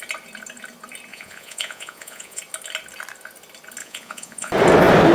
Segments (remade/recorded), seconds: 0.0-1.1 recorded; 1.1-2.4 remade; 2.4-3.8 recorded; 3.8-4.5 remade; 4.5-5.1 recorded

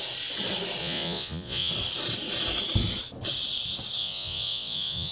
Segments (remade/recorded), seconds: 0.0-0.8 recorded; 0.8-1.7 remade; 1.7-4.0 recorded; 4.0-5.1 remade

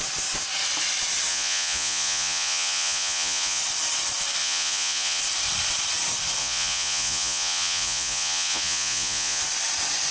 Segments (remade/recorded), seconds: 0.0-1.3 recorded; 1.3-3.6 remade; 3.6-4.4 recorded; 4.4-5.2 remade; 5.2-6.4 recorded; 6.4-9.4 remade; 9.4-10.1 recorded

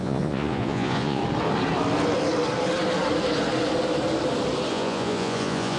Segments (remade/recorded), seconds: 0.0-1.2 remade; 1.2-4.7 recorded; 4.7-5.8 remade

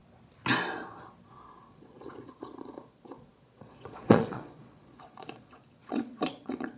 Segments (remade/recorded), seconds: 0.0-1.7 recorded; 1.7-6.8 remade

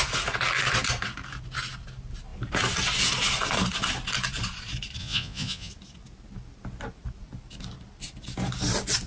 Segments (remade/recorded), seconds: 0.0-5.0 recorded; 5.0-5.7 remade; 5.7-9.1 recorded